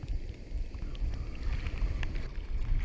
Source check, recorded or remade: recorded